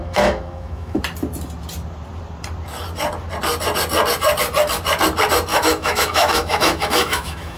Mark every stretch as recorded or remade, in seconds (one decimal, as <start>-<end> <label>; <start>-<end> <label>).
0.0-1.0 remade; 1.0-5.5 recorded; 5.5-7.6 remade